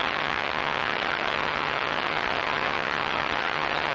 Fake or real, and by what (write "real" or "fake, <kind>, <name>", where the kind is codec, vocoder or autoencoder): fake, vocoder, HiFi-GAN